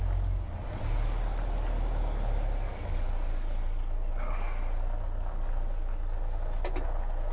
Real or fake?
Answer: real